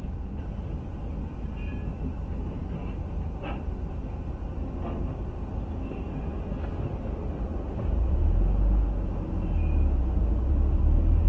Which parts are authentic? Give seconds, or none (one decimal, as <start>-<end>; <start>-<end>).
0.0-11.3